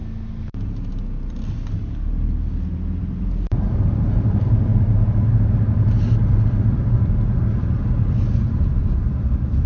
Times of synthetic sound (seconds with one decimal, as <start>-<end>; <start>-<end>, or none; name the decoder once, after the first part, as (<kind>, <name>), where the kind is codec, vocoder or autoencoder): 2.7-9.7 (vocoder, BigVGAN v2)